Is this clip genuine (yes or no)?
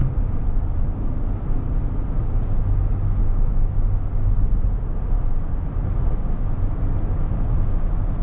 yes